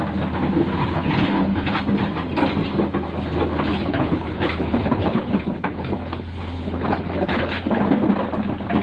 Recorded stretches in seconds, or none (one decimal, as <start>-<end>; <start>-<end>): 0.0-0.8; 1.8-3.7; 7.9-8.8